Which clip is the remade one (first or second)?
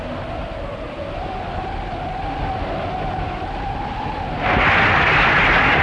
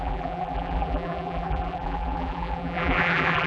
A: second